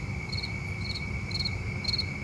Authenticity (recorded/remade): recorded